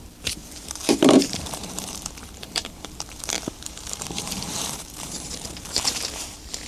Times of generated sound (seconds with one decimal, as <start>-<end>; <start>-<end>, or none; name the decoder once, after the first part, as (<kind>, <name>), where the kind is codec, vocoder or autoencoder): 0.0-6.7 (vocoder, BigVGAN v2)